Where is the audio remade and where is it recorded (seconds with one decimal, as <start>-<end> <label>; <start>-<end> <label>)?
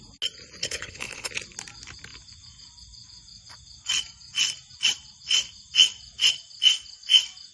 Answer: 0.0-0.6 recorded; 0.6-1.3 remade; 1.3-7.5 recorded